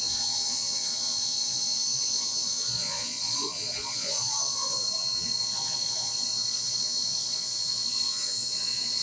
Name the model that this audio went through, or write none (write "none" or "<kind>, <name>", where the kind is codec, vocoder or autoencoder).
vocoder, Vocos